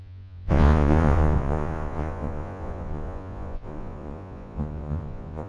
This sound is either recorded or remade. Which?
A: remade